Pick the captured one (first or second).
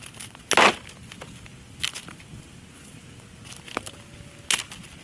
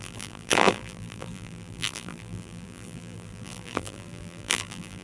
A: first